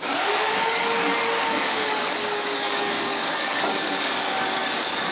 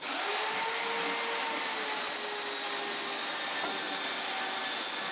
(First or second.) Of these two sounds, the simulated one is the first